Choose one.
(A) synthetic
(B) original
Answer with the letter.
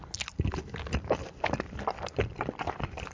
B